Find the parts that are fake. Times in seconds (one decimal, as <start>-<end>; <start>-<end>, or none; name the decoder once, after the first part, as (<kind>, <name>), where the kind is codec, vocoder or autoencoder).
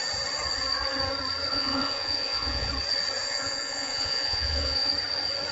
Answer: 1.5-2.7 (vocoder, Vocos); 3.2-4.9